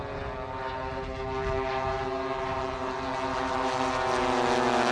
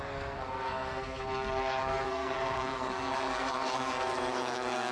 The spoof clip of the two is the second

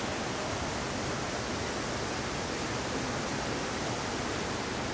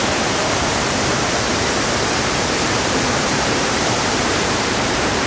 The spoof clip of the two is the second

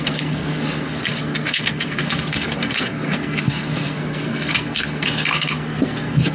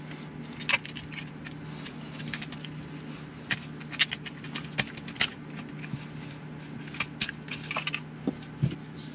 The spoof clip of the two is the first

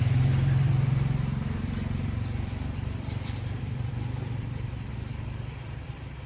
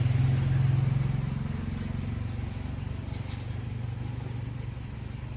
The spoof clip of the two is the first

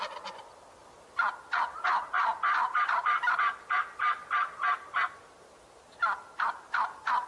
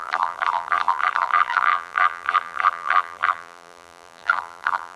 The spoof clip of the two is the second